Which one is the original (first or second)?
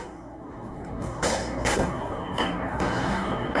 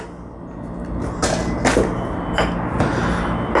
second